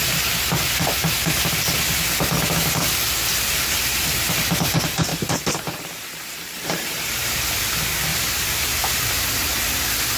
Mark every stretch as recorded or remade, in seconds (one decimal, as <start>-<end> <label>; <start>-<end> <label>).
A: 0.0-3.3 recorded; 3.3-4.3 remade; 4.3-5.1 recorded; 5.1-7.5 remade; 7.5-8.1 recorded; 8.1-9.3 remade; 9.3-10.2 recorded